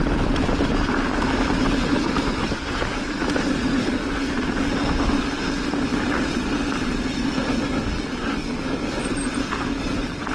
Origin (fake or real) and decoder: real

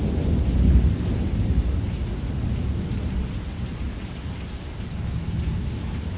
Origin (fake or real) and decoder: real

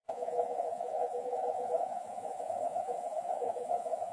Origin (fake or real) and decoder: fake, vocoder, Vocos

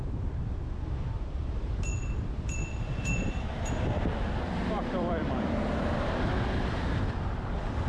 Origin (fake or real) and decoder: fake, vocoder, BigVGAN v2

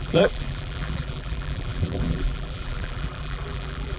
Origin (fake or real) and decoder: fake, vocoder, BigVGAN v2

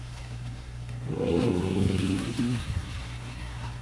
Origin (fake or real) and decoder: fake, codec, SNAC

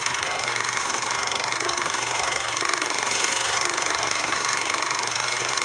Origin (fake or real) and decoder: fake, codec, SNAC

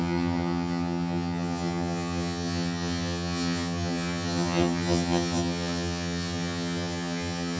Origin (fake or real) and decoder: fake, vocoder, HiFi-GAN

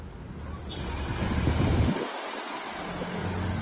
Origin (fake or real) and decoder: real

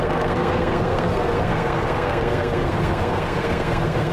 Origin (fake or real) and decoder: fake, codec, SNAC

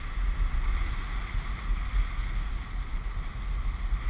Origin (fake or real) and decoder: real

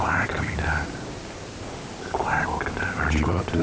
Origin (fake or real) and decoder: real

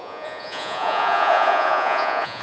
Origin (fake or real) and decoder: fake, vocoder, Vocos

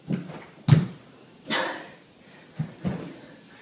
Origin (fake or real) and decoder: real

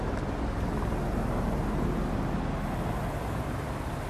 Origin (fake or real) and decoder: real